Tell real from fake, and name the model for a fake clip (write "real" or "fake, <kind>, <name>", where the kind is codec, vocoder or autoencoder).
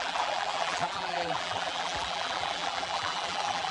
fake, vocoder, BigVGAN v2